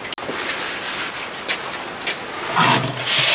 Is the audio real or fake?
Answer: real